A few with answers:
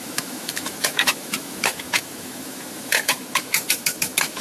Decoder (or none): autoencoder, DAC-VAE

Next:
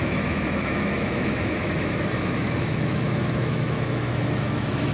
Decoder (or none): autoencoder, DAC-VAE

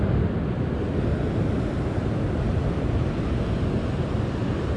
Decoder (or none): none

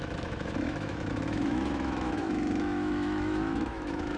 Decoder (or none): autoencoder, DAC-VAE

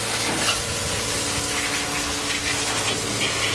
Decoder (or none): none